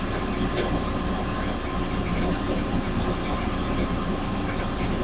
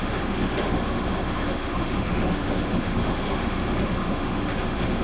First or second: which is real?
first